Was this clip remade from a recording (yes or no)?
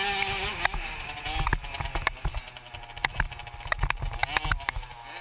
no